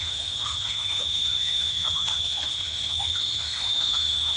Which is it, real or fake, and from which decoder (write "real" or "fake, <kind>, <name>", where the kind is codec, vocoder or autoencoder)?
fake, autoencoder, DAC-VAE